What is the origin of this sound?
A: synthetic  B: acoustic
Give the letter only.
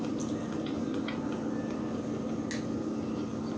B